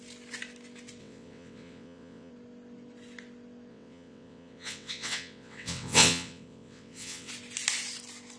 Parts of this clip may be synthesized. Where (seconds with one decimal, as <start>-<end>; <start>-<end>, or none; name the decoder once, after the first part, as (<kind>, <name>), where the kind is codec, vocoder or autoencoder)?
1.0-2.3 (vocoder, WaveNeXt); 3.7-7.3